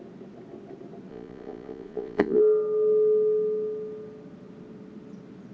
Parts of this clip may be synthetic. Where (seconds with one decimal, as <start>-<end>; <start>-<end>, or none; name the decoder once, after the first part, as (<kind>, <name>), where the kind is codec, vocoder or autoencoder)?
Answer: 1.1-2.4 (vocoder, Vocos)